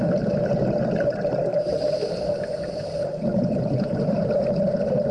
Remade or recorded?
recorded